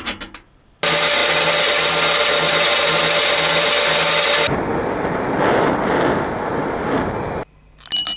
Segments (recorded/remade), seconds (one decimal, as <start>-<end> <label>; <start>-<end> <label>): 0.0-8.2 recorded

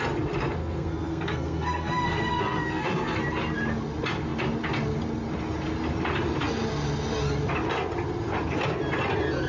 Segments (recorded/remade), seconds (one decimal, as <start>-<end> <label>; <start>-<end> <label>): 0.0-0.6 recorded; 0.6-3.2 remade; 3.2-9.5 recorded

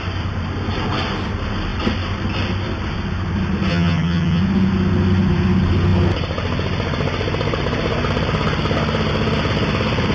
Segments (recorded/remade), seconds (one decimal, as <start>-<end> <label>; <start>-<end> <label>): 0.0-3.7 recorded; 3.7-4.4 remade; 4.4-10.1 recorded

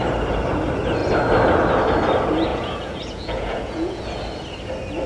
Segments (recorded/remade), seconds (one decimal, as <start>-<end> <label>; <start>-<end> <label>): 0.0-2.5 recorded; 2.5-4.0 remade; 4.0-5.1 recorded

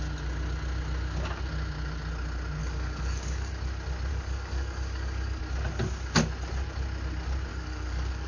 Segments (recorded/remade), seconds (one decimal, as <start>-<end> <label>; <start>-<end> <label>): 0.0-2.6 recorded; 2.6-3.5 remade; 3.5-4.1 recorded; 4.1-5.4 remade; 5.4-7.5 recorded; 7.5-8.3 remade

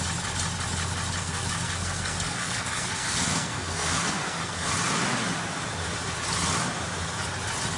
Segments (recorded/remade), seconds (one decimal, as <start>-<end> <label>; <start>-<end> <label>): 0.0-1.2 recorded; 1.2-4.7 remade; 4.7-7.8 recorded

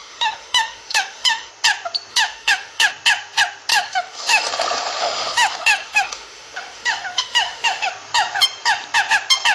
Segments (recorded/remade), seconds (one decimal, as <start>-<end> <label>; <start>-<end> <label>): 0.0-1.5 remade; 1.5-2.1 recorded; 2.1-2.9 remade; 2.9-3.7 recorded; 3.7-4.5 remade; 4.5-5.0 recorded; 5.0-7.9 remade; 7.9-9.5 recorded

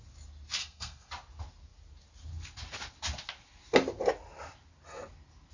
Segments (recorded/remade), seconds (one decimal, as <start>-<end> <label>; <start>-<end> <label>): 0.0-0.6 recorded; 0.6-1.1 remade; 1.1-5.5 recorded